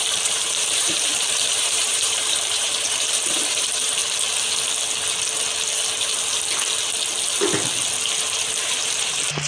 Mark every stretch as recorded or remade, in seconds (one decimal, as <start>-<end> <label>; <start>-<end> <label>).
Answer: 0.0-4.0 remade; 4.0-8.6 recorded; 8.6-9.5 remade